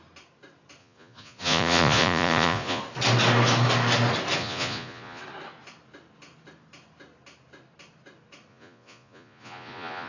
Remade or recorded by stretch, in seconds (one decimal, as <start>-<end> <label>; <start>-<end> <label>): 0.0-0.8 recorded; 0.8-2.8 remade; 2.8-4.4 recorded; 4.4-5.2 remade; 5.2-8.5 recorded; 8.5-10.1 remade